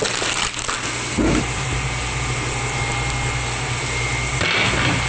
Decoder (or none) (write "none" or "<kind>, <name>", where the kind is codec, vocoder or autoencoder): none